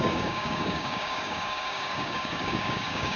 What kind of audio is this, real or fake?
fake